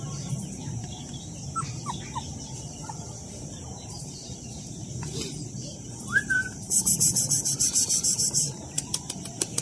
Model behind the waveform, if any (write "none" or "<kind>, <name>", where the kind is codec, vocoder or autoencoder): vocoder, BigVGAN v2